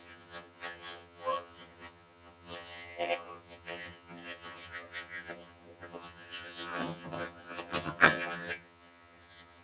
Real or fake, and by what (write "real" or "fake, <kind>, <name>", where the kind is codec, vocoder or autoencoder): fake, vocoder, HiFi-GAN